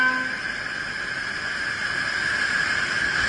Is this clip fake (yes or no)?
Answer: no